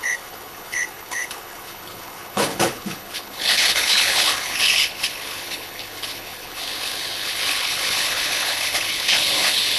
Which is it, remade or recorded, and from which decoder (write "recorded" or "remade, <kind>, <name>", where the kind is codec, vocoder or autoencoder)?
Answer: remade, codec, HILCodec